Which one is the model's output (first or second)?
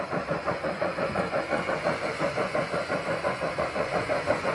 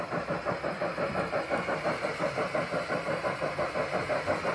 first